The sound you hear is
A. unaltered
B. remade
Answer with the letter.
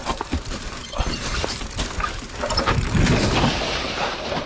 A